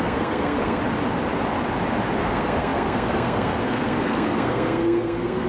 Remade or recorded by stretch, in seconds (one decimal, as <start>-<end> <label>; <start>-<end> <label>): 0.0-0.8 remade; 0.8-2.2 recorded; 2.2-5.5 remade